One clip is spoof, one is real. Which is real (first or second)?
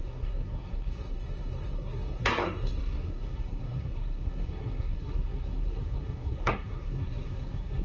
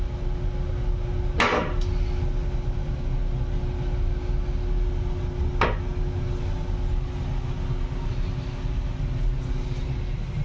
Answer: second